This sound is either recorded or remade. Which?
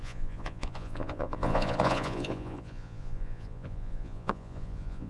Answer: remade